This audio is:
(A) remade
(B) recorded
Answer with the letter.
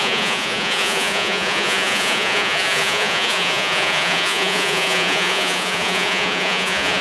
A